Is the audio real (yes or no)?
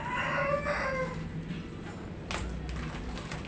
yes